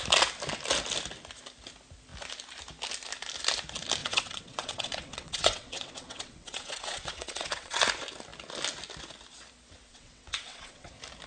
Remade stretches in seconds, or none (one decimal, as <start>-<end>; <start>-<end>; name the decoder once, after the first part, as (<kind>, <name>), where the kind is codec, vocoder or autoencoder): 4.0-7.8 (vocoder, WaveNeXt); 9.9-10.9